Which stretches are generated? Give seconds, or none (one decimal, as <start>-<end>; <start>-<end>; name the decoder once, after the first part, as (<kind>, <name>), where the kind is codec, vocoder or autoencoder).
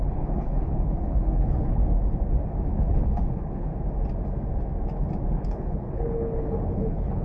0.0-1.8 (codec, HILCodec); 2.7-3.7; 5.3-7.2